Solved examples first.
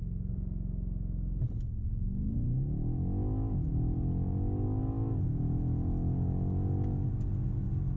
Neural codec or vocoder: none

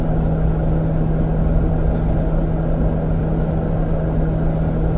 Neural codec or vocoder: none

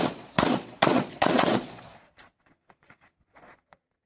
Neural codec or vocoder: vocoder, Vocos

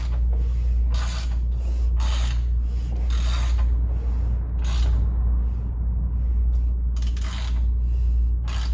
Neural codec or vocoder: none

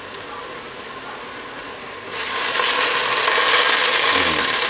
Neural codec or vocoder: none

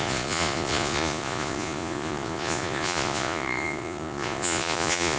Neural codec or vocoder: vocoder, Vocos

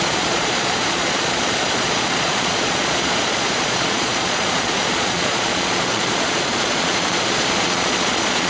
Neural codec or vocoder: vocoder, Vocos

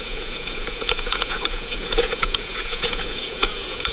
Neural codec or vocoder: vocoder, Vocos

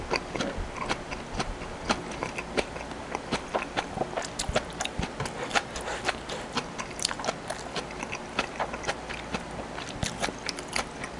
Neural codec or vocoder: none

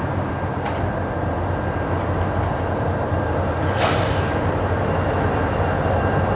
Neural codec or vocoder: none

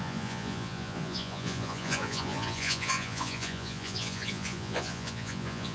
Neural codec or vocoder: vocoder, Vocos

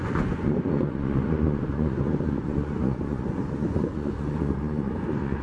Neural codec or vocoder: vocoder, Vocos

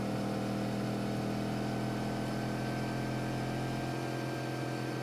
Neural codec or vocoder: none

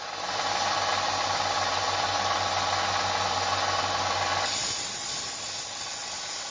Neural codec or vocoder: none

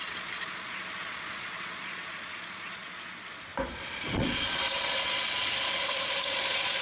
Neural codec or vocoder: vocoder, Vocos